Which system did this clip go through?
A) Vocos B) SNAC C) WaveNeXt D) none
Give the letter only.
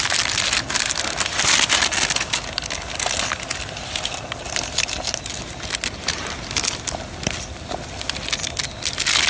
D